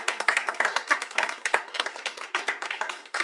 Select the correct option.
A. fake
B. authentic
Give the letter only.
A